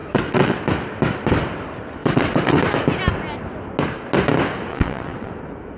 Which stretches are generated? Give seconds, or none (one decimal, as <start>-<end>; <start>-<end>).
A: 0.0-0.6; 2.0-2.6; 4.7-5.3